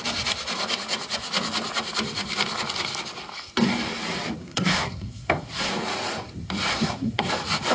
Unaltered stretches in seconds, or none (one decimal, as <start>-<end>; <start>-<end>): 0.0-4.4; 5.7-6.7; 7.3-7.7